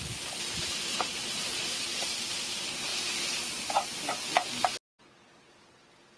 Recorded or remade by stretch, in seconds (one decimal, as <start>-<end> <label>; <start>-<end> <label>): 0.0-0.9 recorded; 0.9-2.0 remade; 2.0-6.2 recorded